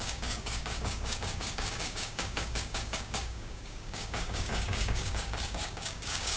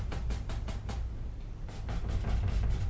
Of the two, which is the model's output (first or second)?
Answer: first